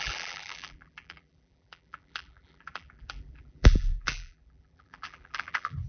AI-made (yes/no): yes